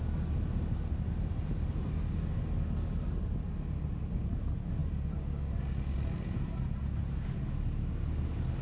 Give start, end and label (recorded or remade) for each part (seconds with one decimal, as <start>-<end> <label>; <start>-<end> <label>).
0.0-8.6 recorded